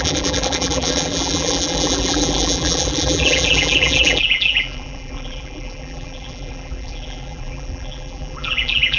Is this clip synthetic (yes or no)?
yes